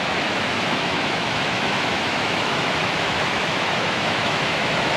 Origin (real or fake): fake